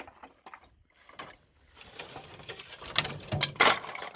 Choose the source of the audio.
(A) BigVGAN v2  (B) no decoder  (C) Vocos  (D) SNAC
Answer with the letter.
B